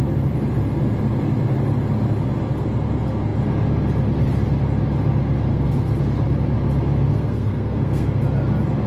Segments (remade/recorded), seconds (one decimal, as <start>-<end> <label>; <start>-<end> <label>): 0.0-5.5 recorded; 5.5-6.0 remade; 6.0-7.1 recorded; 7.1-8.2 remade; 8.2-8.9 recorded